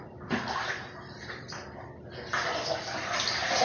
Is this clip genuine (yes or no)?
no